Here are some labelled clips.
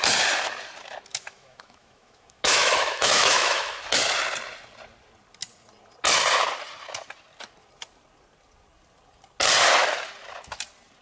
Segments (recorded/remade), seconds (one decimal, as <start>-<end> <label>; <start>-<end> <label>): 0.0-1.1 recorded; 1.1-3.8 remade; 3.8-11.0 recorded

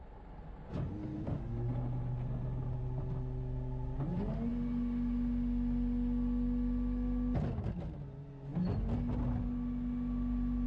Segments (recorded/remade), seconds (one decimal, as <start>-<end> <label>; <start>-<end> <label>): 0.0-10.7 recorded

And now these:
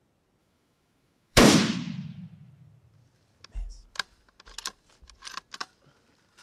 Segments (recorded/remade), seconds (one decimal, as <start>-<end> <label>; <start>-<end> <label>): 0.0-0.4 recorded; 0.4-1.4 remade; 1.4-6.4 recorded

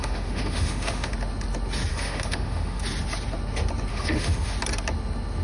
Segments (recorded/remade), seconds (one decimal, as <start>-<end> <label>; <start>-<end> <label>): 0.0-1.1 remade; 1.1-1.9 recorded; 1.9-2.8 remade; 2.8-3.9 recorded; 3.9-4.5 remade; 4.5-5.4 recorded

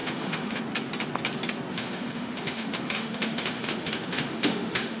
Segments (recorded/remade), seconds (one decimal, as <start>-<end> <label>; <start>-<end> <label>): 0.0-0.6 remade; 0.6-1.7 recorded; 1.7-5.0 remade

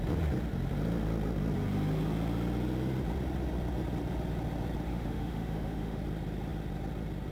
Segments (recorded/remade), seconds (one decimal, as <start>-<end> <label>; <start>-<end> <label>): 0.0-4.9 recorded; 4.9-6.0 remade; 6.0-7.3 recorded

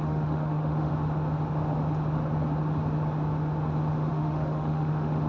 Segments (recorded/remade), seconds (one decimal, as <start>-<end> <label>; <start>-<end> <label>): 0.0-0.9 remade; 0.9-4.1 recorded; 4.1-5.3 remade

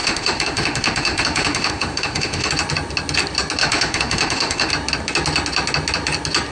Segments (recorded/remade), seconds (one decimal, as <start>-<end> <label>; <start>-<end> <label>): 0.0-2.5 remade; 2.5-3.6 recorded; 3.6-4.7 remade; 4.7-6.5 recorded